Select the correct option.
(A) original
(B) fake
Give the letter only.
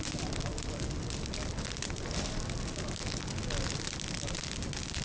A